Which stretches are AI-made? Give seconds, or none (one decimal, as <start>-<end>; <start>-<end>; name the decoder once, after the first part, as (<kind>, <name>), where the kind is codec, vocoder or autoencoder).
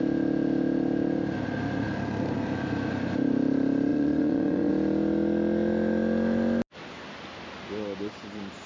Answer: 3.9-4.7 (vocoder, Vocos)